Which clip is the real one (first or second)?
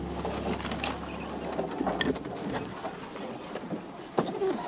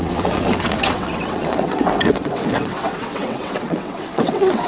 first